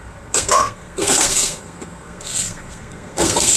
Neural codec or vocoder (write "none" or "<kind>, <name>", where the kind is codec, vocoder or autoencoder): codec, SNAC